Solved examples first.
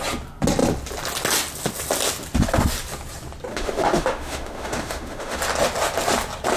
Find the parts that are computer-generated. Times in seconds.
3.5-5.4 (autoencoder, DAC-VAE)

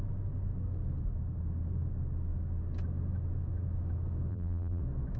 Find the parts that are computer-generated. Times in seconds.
4.3-4.8 (vocoder, BigVGAN v2)

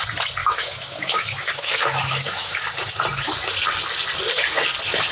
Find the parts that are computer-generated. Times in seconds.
0.4-2.6 (autoencoder, DAC-VAE)

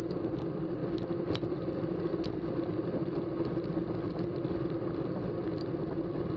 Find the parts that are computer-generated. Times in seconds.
0.8-2.1 (vocoder, BigVGAN v2)

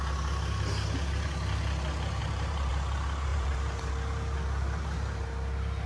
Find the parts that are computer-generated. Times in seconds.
2.2-2.7 (vocoder, BigVGAN v2); 3.3-3.9

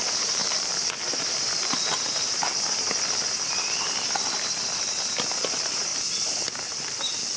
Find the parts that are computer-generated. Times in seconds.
0.0-2.5 (vocoder, BigVGAN v2); 5.4-7.4

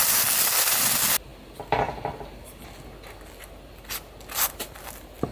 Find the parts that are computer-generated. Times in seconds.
none